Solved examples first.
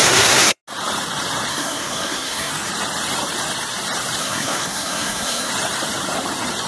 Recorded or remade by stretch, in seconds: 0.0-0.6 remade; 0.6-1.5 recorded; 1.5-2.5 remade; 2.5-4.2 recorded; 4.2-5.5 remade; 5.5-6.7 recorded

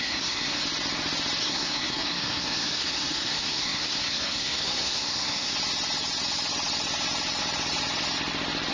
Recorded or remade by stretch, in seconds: 0.0-0.6 remade; 0.6-1.4 recorded; 1.4-5.5 remade; 5.5-8.7 recorded

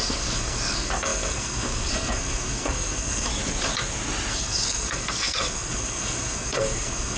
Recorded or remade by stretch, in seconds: 0.0-3.3 remade; 3.3-4.3 recorded; 4.3-7.2 remade

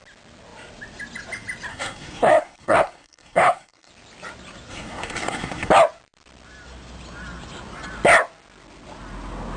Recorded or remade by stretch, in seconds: 0.0-1.7 recorded; 1.7-3.9 remade; 3.9-4.7 recorded; 4.7-5.7 remade; 5.7-9.6 recorded

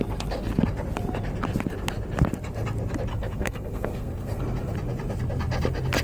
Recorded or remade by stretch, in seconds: 0.0-3.1 recorded; 3.1-4.4 remade; 4.4-6.0 recorded